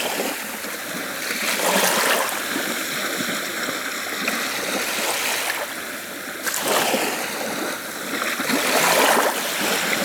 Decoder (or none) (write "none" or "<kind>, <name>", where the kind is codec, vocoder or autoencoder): none